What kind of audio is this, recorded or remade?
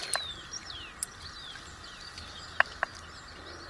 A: recorded